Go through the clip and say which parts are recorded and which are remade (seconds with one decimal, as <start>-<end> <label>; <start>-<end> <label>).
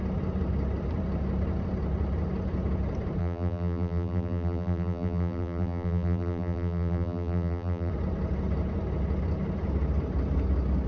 0.0-3.2 recorded; 3.2-7.9 remade; 7.9-10.9 recorded